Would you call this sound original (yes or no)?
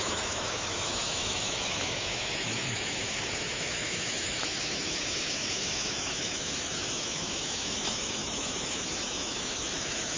no